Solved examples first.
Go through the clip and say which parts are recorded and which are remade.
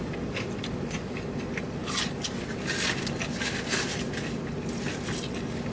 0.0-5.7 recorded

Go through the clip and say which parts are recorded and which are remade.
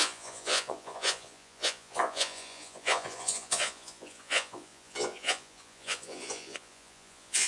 0.0-7.5 remade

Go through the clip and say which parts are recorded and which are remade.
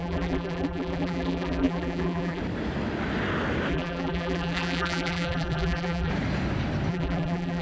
0.0-2.4 remade; 2.4-3.7 recorded; 3.7-6.1 remade; 6.1-6.9 recorded; 6.9-7.6 remade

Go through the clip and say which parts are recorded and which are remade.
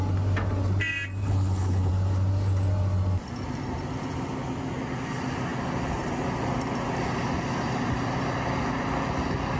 0.0-1.2 recorded; 1.2-1.9 remade; 1.9-9.6 recorded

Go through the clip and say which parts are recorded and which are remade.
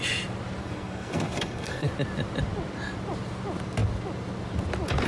0.0-0.6 recorded; 0.6-1.9 remade; 1.9-5.1 recorded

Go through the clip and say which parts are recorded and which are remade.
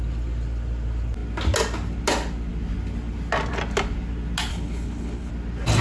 0.0-4.5 recorded; 4.5-5.3 remade; 5.3-5.8 recorded